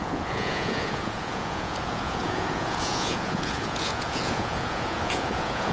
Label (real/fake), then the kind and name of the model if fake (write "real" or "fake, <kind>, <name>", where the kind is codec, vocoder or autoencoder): fake, vocoder, Vocos